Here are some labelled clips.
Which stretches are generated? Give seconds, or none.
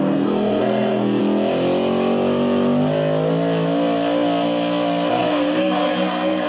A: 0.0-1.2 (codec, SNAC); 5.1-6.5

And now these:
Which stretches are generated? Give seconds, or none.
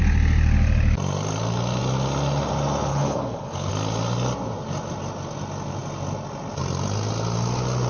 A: 2.9-3.7 (codec, HILCodec)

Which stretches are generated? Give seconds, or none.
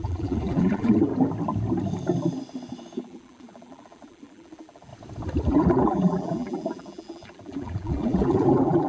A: 0.0-1.1 (vocoder, BigVGAN v2); 3.0-4.9; 5.5-8.9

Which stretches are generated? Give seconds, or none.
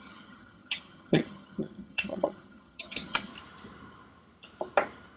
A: 0.0-3.3 (vocoder, HiFi-GAN)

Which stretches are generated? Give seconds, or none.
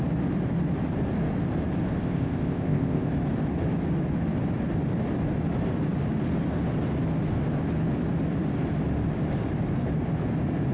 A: 2.0-3.1 (codec, ZipCodec)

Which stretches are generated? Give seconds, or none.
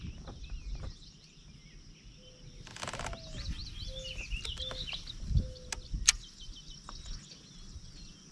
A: none